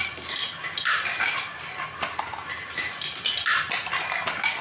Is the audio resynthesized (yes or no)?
no